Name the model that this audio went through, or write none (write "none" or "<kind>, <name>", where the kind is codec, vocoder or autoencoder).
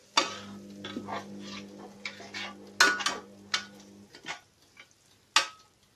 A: none